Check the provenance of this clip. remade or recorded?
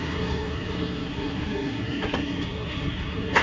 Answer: remade